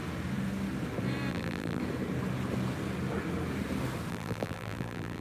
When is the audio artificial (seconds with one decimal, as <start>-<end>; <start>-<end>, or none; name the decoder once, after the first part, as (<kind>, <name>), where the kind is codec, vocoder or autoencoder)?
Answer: 1.3-1.8 (vocoder, BigVGAN v2); 4.1-5.2